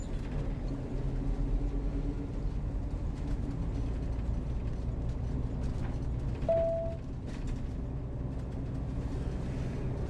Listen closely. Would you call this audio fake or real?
real